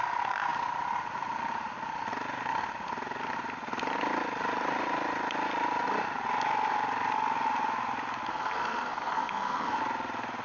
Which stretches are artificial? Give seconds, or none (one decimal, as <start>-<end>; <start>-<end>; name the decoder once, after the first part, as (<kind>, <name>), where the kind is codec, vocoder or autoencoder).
8.3-9.8 (codec, SNAC)